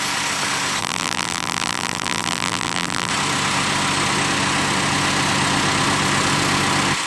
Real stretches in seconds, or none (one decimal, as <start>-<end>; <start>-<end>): 0.0-0.8; 3.1-7.1